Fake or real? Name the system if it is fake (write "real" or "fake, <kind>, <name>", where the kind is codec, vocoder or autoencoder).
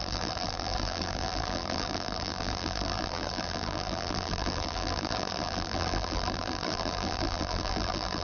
fake, vocoder, BigVGAN v2